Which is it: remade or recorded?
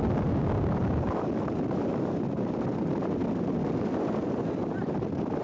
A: recorded